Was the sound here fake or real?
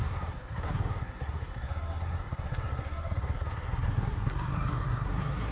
fake